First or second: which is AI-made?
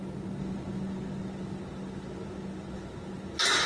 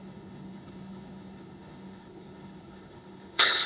second